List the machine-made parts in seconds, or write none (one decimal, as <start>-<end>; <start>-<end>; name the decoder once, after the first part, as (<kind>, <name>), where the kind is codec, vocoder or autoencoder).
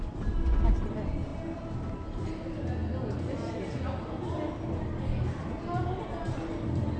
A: none